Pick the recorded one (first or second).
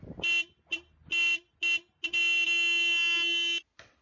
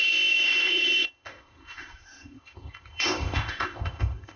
first